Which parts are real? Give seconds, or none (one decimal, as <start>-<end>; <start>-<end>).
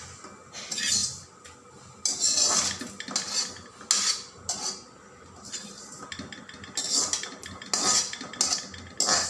0.0-9.3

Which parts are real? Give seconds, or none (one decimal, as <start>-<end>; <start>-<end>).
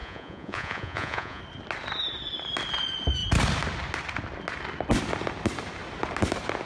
1.4-6.7